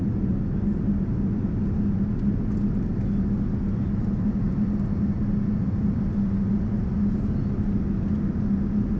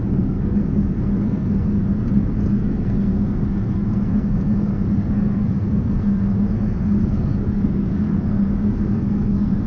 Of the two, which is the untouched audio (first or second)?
first